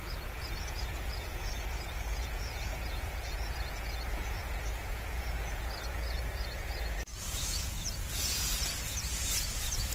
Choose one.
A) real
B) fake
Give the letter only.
B